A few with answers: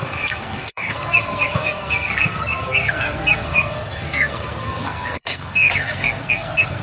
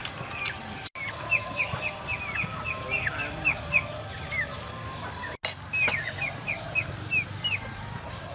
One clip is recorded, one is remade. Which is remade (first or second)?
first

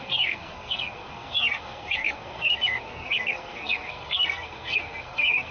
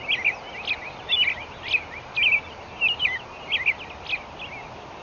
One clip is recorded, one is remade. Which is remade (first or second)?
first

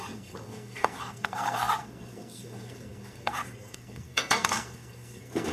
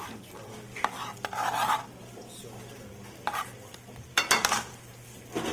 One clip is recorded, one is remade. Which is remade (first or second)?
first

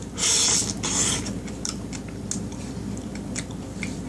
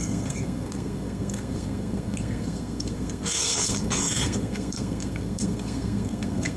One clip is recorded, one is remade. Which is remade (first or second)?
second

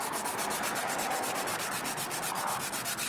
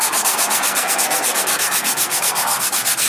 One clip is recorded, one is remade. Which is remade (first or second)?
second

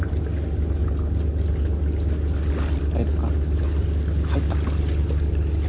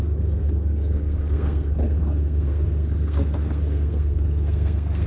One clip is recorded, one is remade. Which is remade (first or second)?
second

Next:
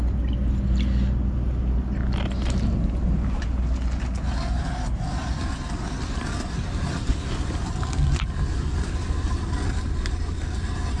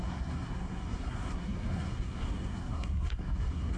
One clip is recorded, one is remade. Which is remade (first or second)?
second